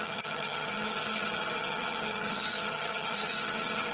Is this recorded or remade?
remade